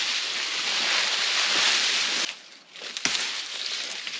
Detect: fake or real real